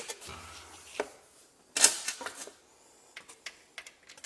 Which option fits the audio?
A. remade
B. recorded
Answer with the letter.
B